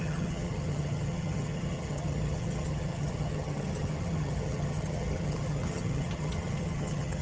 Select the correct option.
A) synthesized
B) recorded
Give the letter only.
A